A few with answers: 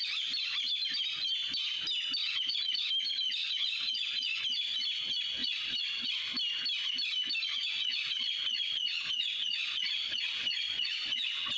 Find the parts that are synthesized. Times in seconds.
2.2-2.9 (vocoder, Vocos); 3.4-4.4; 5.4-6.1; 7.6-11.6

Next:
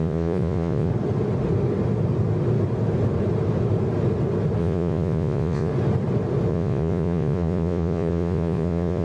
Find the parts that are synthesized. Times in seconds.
0.0-0.9 (vocoder, Vocos); 4.6-5.7; 6.5-9.0

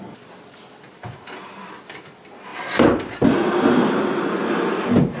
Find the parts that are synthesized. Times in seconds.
none

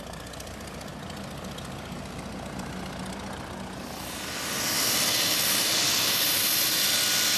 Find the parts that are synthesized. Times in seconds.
none

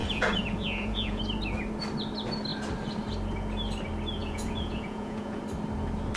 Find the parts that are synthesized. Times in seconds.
0.0-1.2 (vocoder, Vocos); 4.2-5.4

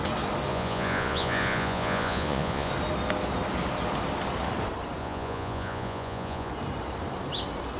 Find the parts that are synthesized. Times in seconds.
0.5-2.7 (vocoder, Vocos); 5.0-6.5